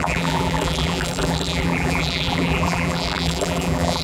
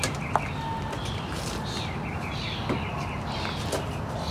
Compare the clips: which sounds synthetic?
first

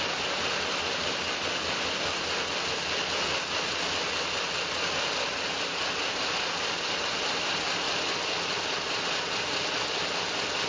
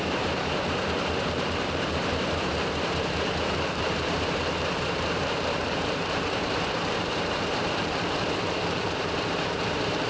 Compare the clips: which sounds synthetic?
second